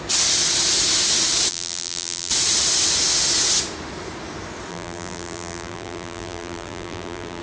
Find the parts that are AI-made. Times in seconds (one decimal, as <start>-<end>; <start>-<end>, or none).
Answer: 1.5-2.3; 4.7-7.4